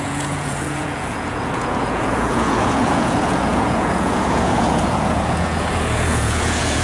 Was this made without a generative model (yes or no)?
no